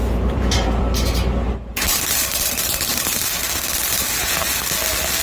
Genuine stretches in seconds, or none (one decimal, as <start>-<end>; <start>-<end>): 0.8-1.7; 4.6-5.2